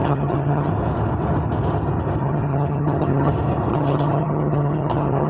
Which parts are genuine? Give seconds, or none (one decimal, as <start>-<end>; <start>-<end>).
0.7-2.2; 3.3-3.7